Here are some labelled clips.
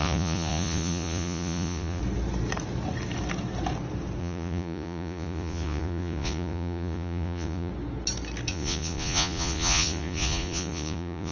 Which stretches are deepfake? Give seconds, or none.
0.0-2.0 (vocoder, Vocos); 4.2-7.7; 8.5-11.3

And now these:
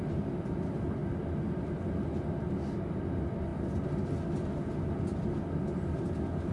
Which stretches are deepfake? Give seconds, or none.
none